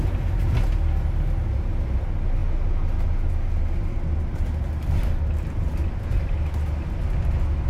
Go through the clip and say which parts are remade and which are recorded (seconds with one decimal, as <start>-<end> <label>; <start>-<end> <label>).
0.0-7.7 recorded